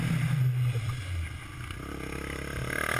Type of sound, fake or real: real